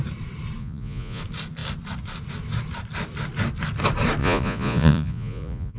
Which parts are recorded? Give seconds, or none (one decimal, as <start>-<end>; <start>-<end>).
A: 0.0-0.6; 1.2-4.2